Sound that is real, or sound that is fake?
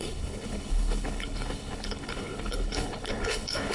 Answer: fake